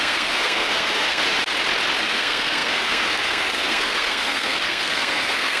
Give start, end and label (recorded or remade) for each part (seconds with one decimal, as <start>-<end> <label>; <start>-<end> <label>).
0.0-1.2 remade; 1.2-2.0 recorded; 2.0-5.6 remade